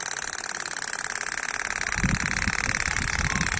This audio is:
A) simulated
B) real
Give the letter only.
B